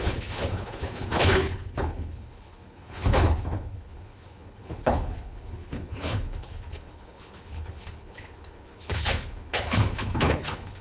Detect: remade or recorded remade